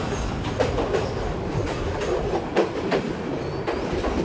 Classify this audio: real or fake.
real